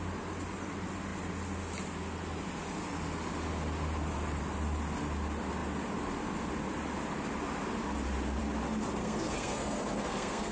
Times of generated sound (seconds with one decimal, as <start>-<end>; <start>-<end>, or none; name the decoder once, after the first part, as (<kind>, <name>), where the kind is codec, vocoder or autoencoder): 9.0-10.5 (codec, SNAC)